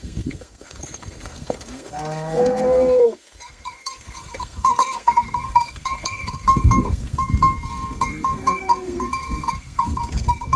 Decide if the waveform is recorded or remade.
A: remade